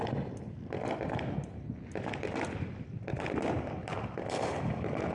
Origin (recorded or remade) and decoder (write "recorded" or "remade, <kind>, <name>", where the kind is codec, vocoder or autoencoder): recorded